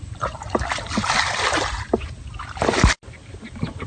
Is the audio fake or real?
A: real